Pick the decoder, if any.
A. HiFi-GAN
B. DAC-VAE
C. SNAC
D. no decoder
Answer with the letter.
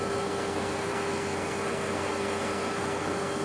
C